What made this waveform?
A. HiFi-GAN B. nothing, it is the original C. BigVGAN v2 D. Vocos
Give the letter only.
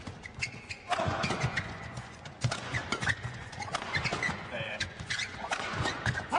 D